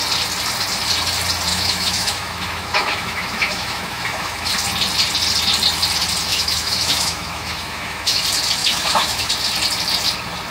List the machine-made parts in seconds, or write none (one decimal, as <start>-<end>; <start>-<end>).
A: 1.5-4.5; 6.3-8.2; 8.6-9.3